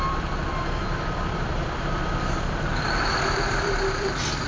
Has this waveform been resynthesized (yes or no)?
yes